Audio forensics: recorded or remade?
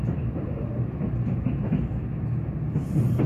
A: recorded